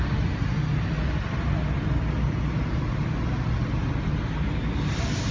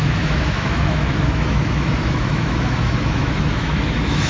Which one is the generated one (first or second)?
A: second